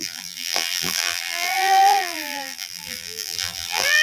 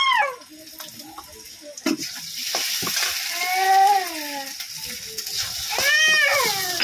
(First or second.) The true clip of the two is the second